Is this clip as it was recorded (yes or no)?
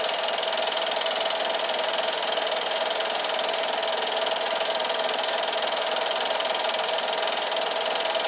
yes